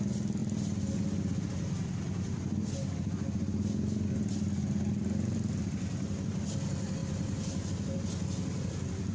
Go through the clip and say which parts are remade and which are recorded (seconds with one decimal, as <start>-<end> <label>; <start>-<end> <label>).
0.0-9.1 recorded